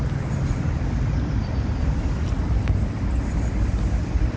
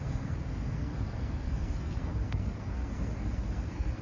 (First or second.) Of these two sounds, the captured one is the first